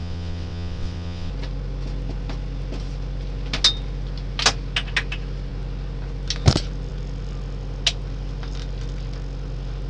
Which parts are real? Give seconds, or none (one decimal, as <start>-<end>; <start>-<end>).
1.3-9.9